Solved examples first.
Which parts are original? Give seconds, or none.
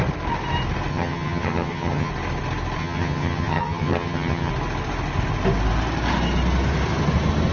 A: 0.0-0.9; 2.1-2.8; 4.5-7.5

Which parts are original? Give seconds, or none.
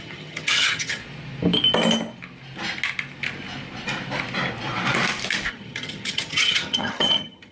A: 1.0-5.5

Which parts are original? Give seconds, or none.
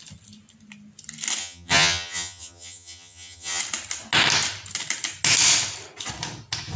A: 0.0-1.4; 3.6-6.8